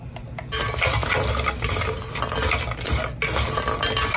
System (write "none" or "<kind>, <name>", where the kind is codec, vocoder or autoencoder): none